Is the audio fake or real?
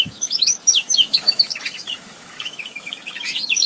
fake